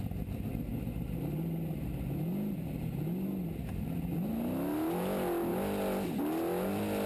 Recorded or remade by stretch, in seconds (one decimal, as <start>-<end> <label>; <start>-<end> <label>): 0.0-7.1 recorded